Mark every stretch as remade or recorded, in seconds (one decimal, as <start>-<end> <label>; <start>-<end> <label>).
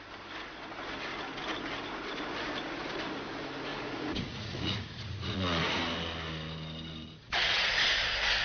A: 0.0-3.7 recorded; 3.7-5.8 remade; 5.8-7.2 recorded; 7.2-7.7 remade; 7.7-8.4 recorded